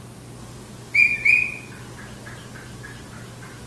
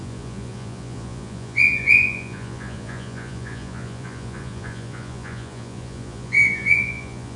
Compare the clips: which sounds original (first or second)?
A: first